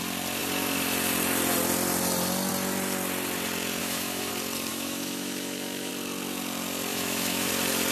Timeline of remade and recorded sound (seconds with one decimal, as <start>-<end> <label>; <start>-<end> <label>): 0.0-3.8 recorded; 3.8-4.3 remade; 4.3-4.7 recorded; 4.7-5.9 remade; 5.9-6.9 recorded; 6.9-7.5 remade; 7.5-7.9 recorded